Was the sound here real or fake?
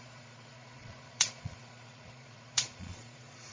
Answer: fake